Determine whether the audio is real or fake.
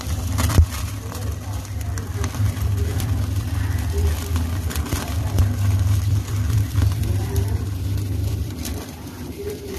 fake